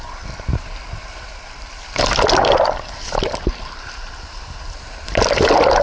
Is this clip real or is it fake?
fake